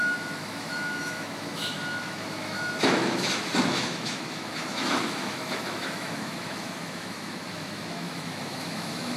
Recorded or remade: remade